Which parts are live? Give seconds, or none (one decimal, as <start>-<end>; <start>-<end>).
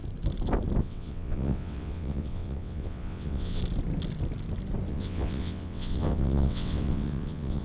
0.0-0.8; 3.6-4.9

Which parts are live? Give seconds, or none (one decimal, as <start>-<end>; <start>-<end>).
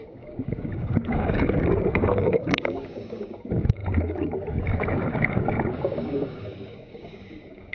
none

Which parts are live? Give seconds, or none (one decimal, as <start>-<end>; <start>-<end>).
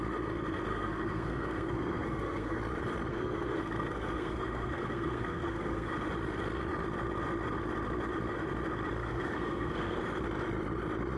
0.0-0.7; 2.6-3.1; 5.9-9.0; 10.0-11.2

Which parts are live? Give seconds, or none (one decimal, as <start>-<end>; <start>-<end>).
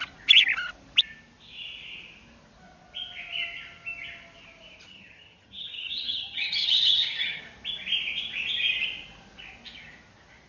0.0-4.9; 7.4-10.5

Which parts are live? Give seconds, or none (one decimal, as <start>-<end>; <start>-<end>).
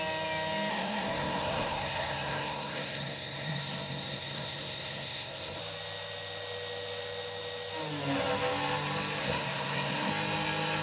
0.0-0.7; 5.6-9.2; 10.1-10.8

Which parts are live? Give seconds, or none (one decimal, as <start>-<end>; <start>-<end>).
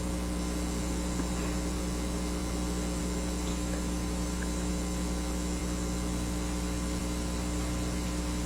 0.0-3.5; 4.7-8.5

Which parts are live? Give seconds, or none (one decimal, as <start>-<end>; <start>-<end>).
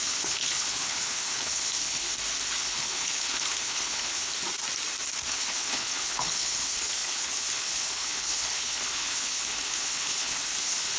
2.1-2.6; 4.3-5.3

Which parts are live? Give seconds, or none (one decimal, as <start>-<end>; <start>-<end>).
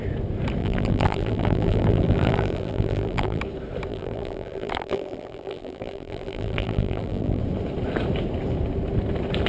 0.0-0.6; 3.4-3.9; 7.4-9.5